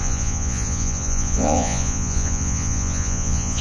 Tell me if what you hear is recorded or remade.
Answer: remade